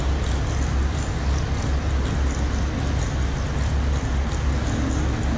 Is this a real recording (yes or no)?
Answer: yes